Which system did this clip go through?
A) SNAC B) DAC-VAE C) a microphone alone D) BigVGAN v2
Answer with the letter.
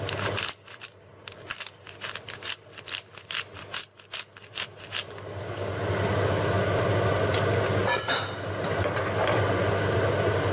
C